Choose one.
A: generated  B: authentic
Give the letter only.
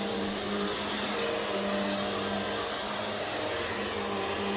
B